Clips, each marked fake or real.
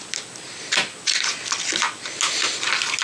real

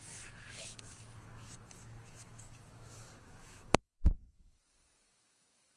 fake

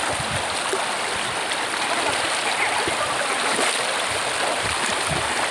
real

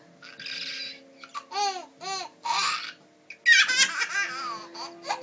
real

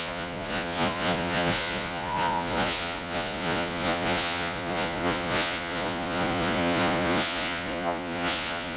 fake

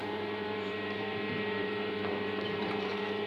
fake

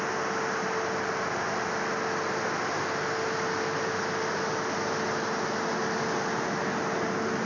real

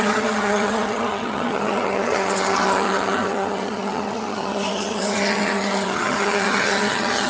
fake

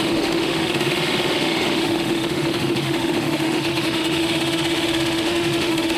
fake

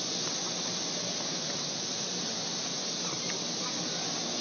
real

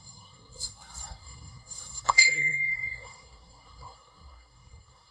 fake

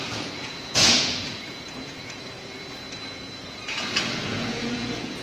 fake